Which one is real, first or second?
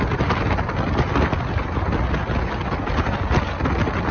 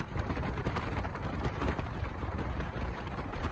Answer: first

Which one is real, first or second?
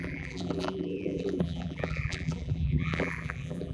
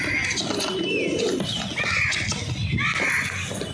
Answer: second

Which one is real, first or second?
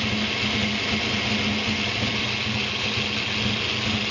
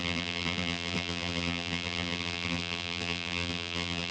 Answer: first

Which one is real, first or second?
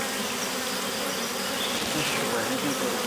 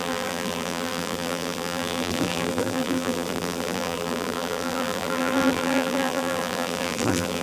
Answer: first